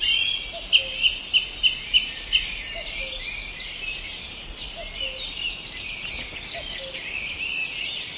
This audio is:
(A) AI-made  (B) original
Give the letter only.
B